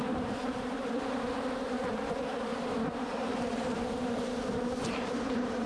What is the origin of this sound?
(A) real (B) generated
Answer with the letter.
B